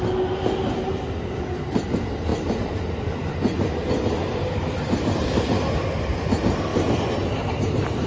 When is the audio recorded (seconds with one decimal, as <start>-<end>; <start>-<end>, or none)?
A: 0.0-8.1